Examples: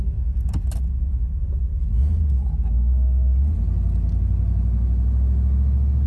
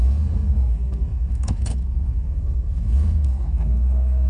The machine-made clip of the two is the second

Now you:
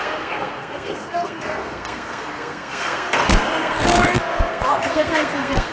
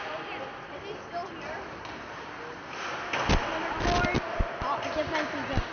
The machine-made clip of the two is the first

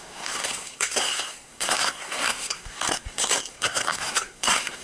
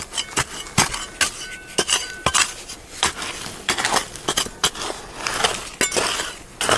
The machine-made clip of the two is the first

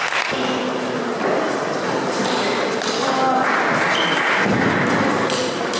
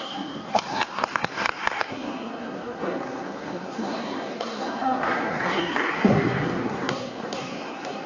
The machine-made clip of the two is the second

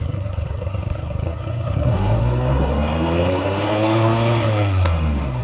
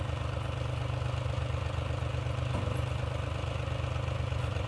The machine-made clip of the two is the first